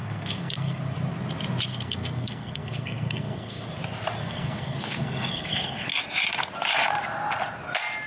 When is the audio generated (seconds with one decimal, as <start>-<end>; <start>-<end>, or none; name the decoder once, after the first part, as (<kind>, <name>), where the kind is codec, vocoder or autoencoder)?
0.0-0.8 (codec, SNAC); 1.7-3.7; 4.2-5.9